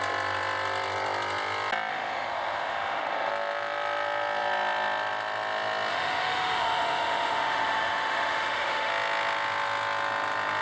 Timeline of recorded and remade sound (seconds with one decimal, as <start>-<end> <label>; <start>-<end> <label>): 0.0-1.9 recorded; 1.9-3.3 remade; 3.3-5.9 recorded; 5.9-8.9 remade; 8.9-10.6 recorded